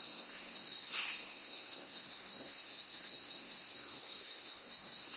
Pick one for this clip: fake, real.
fake